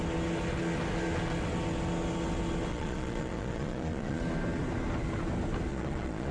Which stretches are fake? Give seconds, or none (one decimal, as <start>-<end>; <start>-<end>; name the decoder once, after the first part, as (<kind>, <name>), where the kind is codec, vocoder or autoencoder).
2.7-4.2 (vocoder, Vocos); 5.7-6.3

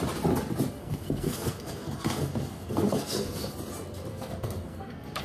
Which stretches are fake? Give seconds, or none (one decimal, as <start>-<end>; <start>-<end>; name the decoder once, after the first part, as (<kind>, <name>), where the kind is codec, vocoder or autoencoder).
0.8-3.5 (codec, SNAC); 4.1-5.2